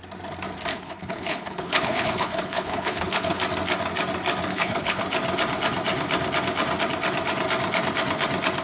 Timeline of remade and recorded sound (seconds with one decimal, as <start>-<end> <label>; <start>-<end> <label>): 0.0-0.7 recorded; 0.7-3.4 remade; 3.4-4.5 recorded; 4.5-5.0 remade; 5.0-8.6 recorded